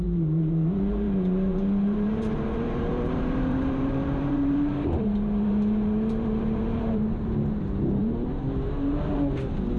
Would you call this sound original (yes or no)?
no